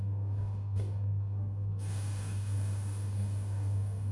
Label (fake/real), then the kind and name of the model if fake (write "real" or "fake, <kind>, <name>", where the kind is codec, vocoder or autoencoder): fake, codec, DAC